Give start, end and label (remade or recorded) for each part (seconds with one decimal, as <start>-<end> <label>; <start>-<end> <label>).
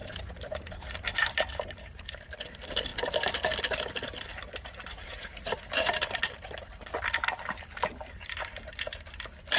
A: 0.0-2.2 remade; 2.2-4.3 recorded; 4.3-6.6 remade; 6.6-9.6 recorded